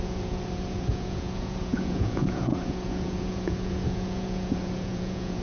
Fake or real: fake